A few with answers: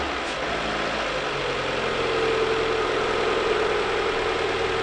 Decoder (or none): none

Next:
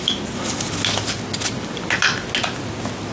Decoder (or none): none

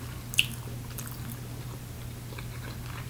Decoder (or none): none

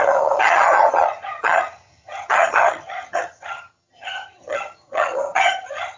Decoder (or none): vocoder, HiFi-GAN